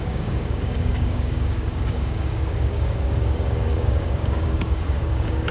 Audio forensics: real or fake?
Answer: fake